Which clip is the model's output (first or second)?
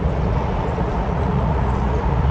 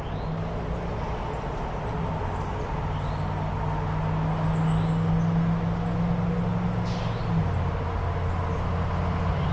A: first